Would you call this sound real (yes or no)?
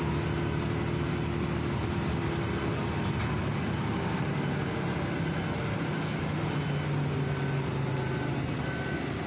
yes